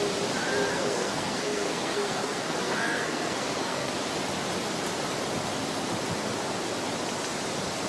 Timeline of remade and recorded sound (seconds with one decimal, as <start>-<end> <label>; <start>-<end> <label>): 0.0-0.7 recorded; 0.7-3.9 remade; 3.9-7.9 recorded